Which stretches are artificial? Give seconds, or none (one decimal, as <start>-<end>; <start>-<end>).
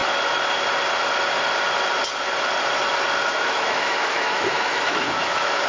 3.4-5.7